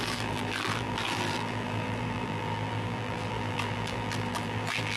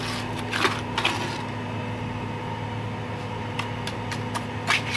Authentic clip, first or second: second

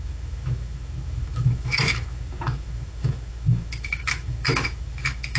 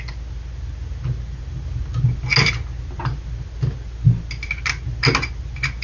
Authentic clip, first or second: second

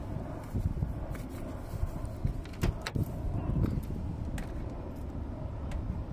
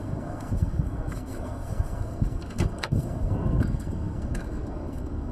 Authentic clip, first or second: first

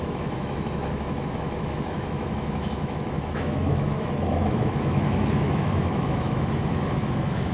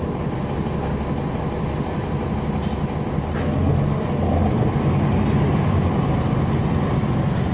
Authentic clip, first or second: second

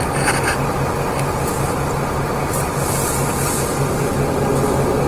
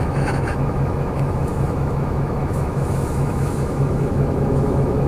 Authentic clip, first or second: first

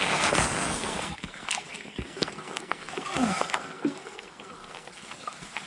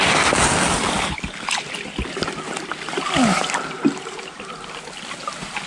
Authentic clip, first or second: second